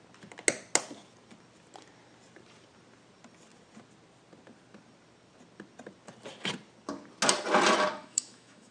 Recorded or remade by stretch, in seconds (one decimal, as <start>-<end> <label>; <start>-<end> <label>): 0.0-8.0 recorded; 8.0-8.7 remade